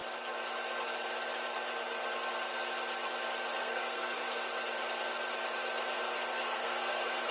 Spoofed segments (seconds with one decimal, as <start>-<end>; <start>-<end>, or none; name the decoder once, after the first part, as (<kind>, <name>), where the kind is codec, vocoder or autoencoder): 3.6-4.4 (codec, SNAC); 6.3-7.3